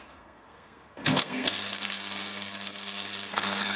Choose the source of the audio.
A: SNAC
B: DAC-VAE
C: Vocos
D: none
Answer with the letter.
A